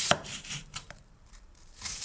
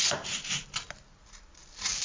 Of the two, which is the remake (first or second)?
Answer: first